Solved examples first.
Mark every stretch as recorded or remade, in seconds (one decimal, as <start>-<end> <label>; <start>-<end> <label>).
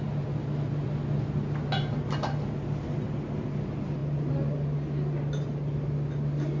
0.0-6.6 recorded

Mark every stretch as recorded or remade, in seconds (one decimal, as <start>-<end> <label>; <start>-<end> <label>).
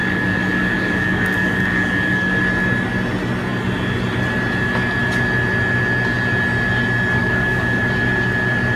0.0-2.4 remade; 2.4-7.2 recorded; 7.2-7.8 remade; 7.8-8.8 recorded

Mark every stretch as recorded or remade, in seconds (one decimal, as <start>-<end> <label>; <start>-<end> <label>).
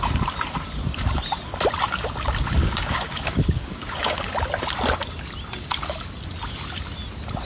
0.0-2.6 recorded; 2.6-4.3 remade; 4.3-7.4 recorded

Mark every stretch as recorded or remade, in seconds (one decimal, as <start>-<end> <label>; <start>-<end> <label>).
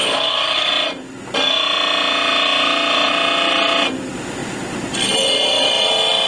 0.0-0.7 remade; 0.7-6.3 recorded